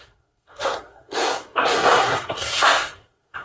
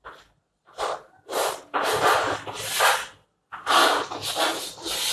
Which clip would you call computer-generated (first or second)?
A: first